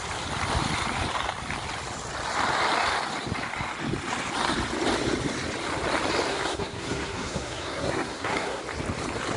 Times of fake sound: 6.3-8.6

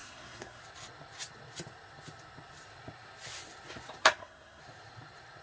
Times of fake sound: 0.0-0.6; 4.0-4.6

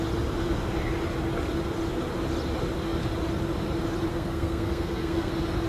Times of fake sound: 4.1-5.3

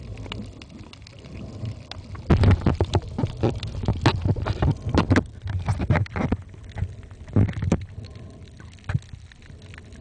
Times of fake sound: none

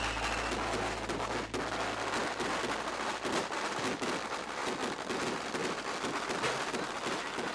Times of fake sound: none

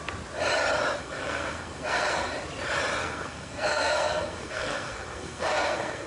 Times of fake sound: 1.0-2.3; 3.0-6.1

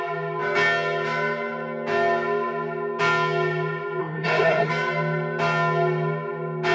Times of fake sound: 4.0-4.7

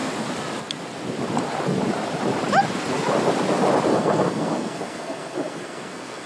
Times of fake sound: 3.9-6.3